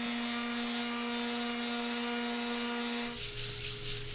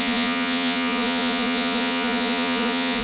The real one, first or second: first